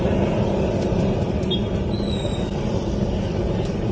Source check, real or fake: real